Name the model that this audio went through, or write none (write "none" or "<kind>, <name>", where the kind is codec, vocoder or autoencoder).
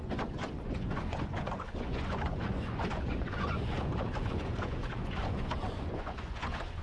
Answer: vocoder, Vocos